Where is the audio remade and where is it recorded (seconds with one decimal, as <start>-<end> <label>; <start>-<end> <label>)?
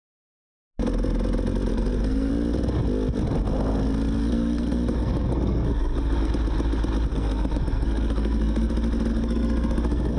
0.0-1.7 recorded; 1.7-2.3 remade; 2.3-4.2 recorded; 4.2-6.3 remade; 6.3-7.1 recorded; 7.1-8.7 remade; 8.7-9.1 recorded; 9.1-10.2 remade